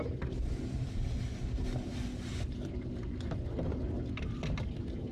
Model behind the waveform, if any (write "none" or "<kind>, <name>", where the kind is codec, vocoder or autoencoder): none